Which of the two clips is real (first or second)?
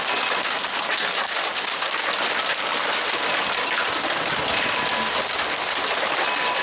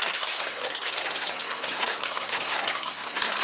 first